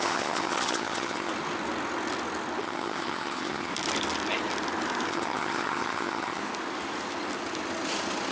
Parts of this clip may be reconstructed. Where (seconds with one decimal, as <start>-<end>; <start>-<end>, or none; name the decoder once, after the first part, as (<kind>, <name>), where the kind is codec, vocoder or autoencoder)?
0.0-1.3 (vocoder, HiFi-GAN); 2.6-3.7; 5.1-6.4